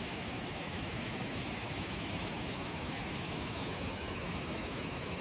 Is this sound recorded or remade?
remade